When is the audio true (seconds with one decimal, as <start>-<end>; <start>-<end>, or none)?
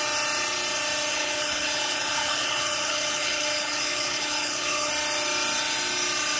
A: 0.0-1.1; 4.9-6.4